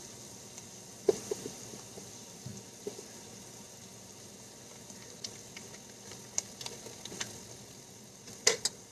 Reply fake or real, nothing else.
real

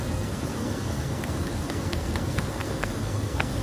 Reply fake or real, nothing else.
fake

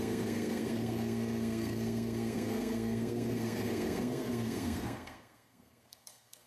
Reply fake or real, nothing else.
fake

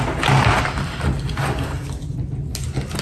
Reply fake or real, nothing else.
real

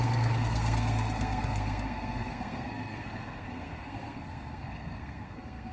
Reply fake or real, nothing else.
fake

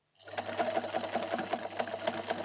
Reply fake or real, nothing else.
real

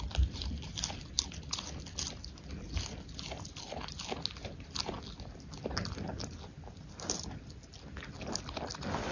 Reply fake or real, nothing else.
real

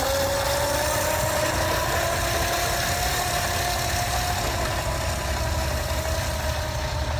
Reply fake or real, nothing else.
real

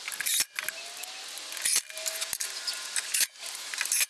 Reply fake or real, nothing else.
real